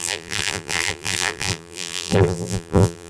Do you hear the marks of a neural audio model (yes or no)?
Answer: yes